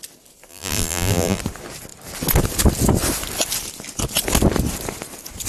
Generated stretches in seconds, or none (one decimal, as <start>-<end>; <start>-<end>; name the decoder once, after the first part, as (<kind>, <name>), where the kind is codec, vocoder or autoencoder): 0.5-1.4 (vocoder, BigVGAN v2)